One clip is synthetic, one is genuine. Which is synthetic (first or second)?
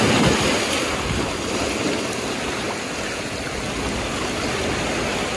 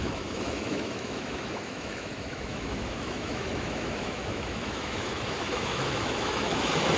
second